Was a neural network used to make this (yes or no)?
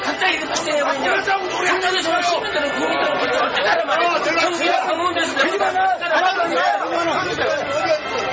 no